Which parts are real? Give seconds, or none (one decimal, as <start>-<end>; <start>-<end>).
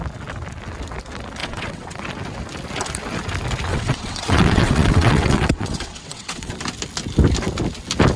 0.0-1.4; 2.0-3.7; 6.5-8.2